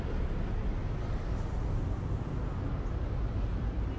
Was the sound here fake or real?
real